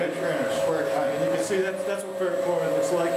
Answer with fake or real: real